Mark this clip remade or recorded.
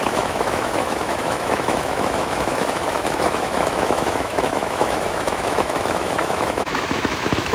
remade